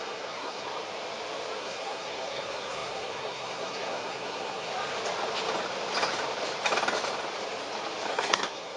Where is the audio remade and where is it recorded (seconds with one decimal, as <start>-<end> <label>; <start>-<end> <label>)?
0.0-0.7 remade; 0.7-1.6 recorded; 1.6-4.7 remade; 4.7-8.1 recorded; 8.1-8.8 remade

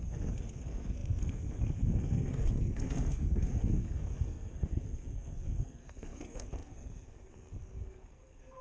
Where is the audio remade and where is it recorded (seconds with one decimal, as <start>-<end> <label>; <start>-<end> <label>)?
0.0-8.6 remade

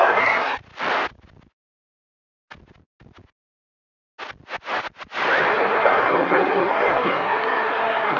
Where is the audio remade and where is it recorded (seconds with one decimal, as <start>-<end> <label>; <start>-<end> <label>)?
0.0-0.6 remade; 0.6-5.5 recorded; 5.5-8.2 remade

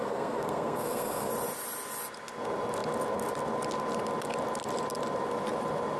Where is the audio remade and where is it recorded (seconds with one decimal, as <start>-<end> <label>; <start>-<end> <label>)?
0.0-1.3 remade; 1.3-6.0 recorded